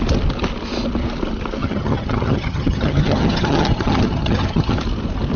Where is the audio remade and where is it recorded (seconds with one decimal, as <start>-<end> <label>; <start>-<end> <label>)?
0.0-1.6 recorded; 1.6-4.8 remade; 4.8-5.4 recorded